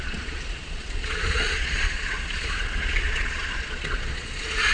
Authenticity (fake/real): fake